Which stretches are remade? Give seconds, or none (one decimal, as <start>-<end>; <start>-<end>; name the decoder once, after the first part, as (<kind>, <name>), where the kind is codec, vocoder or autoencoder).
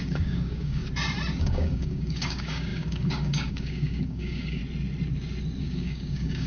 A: 0.0-0.8 (codec, DAC); 1.4-4.6; 5.6-6.5